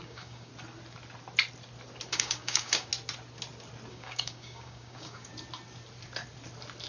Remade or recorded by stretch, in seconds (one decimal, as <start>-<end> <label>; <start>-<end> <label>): 0.0-0.5 remade; 0.5-2.1 recorded; 2.1-2.9 remade; 2.9-3.9 recorded; 3.9-5.3 remade; 5.3-6.9 recorded